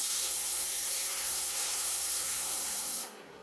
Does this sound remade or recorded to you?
remade